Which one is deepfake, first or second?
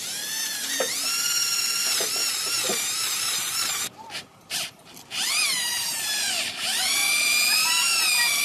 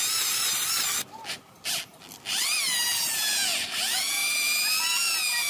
first